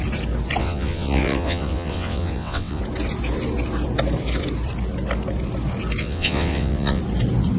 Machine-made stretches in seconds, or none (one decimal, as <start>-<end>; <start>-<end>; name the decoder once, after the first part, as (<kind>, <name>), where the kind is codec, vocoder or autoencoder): 0.6-2.8 (vocoder, WaveNeXt); 6.0-7.0